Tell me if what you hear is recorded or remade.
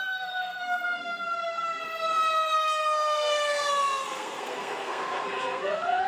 remade